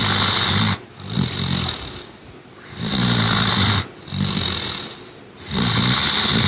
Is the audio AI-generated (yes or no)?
no